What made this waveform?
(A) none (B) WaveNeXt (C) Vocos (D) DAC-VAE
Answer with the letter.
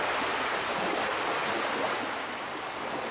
A